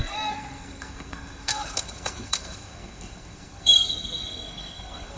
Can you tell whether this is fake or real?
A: fake